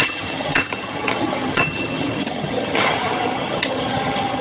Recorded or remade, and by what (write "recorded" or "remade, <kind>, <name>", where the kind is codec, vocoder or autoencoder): remade, vocoder, HiFi-GAN